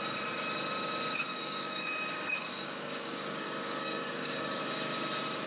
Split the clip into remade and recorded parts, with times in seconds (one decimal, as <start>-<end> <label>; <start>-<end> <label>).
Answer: 0.0-1.3 recorded; 1.3-4.6 remade; 4.6-5.5 recorded